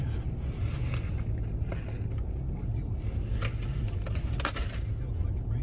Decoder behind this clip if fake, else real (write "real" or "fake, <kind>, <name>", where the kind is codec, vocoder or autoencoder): real